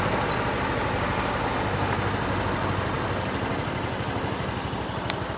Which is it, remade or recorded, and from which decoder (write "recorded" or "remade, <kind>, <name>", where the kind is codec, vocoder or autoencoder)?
recorded